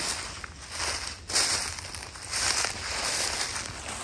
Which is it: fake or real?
real